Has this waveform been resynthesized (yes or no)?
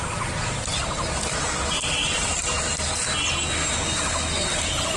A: no